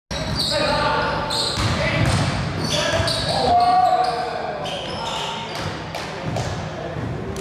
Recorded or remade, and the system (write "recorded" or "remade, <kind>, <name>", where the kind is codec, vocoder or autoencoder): recorded